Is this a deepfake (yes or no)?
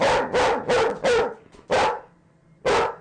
no